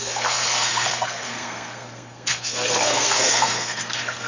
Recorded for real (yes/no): no